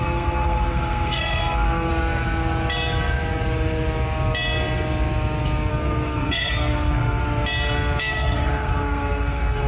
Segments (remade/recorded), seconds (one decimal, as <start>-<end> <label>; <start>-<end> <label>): 0.0-1.9 remade; 1.9-5.7 recorded; 5.7-7.2 remade; 7.2-8.0 recorded; 8.0-9.7 remade